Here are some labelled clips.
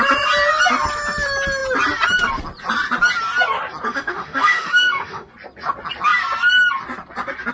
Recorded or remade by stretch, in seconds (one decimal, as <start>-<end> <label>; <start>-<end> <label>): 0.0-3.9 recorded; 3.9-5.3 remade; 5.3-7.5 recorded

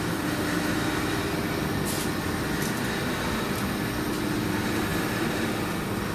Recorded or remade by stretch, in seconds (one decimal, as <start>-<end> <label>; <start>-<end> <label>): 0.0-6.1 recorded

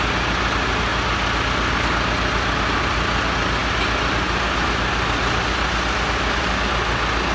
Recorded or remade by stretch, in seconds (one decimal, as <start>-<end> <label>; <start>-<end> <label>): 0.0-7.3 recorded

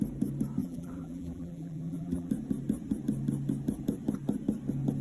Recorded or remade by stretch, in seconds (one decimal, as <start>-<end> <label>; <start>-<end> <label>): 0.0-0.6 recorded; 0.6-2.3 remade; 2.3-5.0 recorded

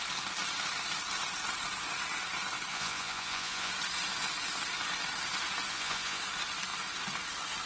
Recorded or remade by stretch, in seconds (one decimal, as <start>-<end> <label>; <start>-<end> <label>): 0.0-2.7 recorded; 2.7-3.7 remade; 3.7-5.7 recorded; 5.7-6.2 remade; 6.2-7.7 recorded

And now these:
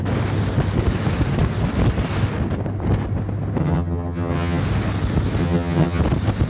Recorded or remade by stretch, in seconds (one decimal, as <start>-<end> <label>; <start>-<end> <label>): 0.0-3.6 recorded; 3.6-4.6 remade; 4.6-5.4 recorded; 5.4-6.0 remade; 6.0-6.5 recorded

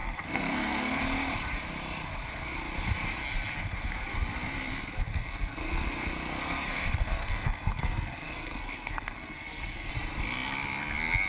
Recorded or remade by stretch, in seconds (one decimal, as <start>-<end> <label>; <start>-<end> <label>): 0.0-1.0 remade; 1.0-5.1 recorded; 5.1-9.9 remade; 9.9-11.3 recorded

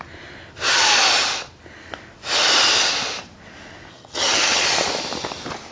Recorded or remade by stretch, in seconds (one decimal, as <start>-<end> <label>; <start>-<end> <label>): 0.0-3.9 recorded; 3.9-4.6 remade; 4.6-5.7 recorded